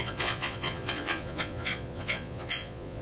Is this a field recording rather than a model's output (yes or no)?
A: no